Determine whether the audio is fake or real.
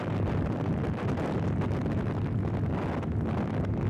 real